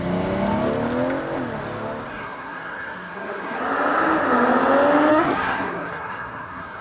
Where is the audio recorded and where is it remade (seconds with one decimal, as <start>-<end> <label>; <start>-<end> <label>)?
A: 0.0-2.1 recorded; 2.1-3.6 remade; 3.6-5.1 recorded; 5.1-6.8 remade